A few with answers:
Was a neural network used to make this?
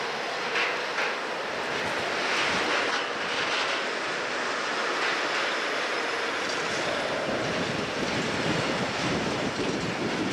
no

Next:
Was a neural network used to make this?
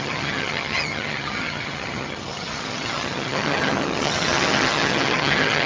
yes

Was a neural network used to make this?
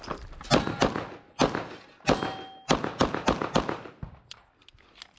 no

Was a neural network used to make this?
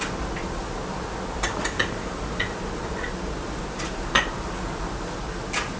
no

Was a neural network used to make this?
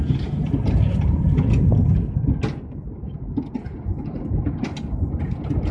no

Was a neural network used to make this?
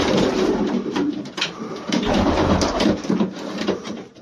yes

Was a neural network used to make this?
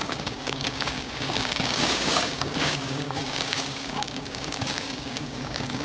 yes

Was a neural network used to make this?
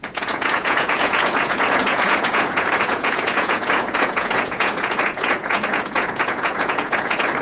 yes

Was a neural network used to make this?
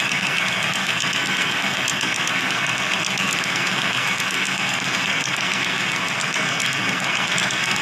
yes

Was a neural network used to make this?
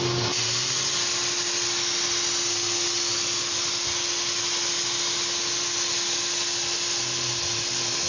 no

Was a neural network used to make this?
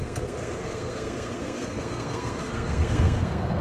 yes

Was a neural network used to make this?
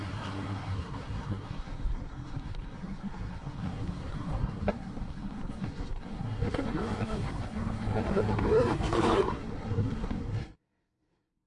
yes